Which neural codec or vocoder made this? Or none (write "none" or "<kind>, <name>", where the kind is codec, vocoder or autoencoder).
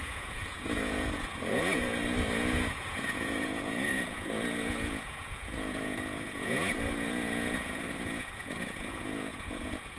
vocoder, Vocos